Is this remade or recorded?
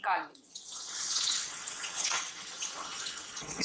remade